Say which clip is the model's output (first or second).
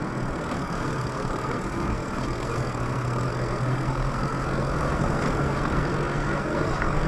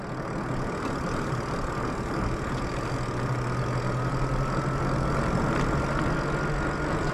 first